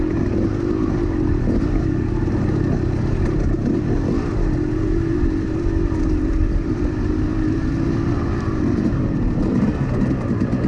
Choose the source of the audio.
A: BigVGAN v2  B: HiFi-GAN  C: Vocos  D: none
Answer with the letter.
D